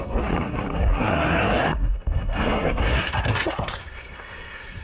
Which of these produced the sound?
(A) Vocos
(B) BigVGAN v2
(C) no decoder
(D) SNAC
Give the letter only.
D